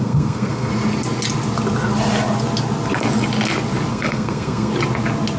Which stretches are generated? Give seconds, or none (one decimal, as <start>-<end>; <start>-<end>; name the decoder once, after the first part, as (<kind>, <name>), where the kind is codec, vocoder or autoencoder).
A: 0.0-0.7 (codec, SNAC); 3.9-4.7